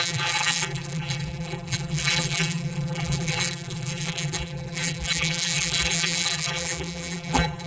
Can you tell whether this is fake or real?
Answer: fake